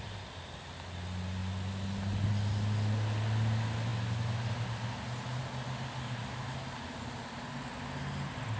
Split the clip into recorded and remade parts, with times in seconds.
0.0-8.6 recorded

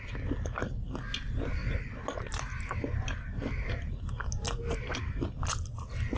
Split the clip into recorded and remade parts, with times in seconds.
0.0-6.2 recorded

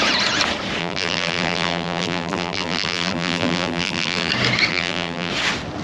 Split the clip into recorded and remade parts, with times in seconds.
0.0-0.8 recorded; 0.8-4.3 remade; 4.3-4.7 recorded; 4.7-5.3 remade; 5.3-5.8 recorded